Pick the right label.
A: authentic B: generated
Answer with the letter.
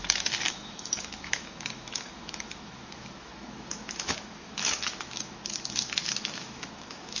B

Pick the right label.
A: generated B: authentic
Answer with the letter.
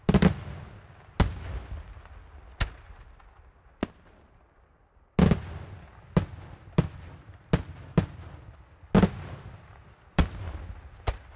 B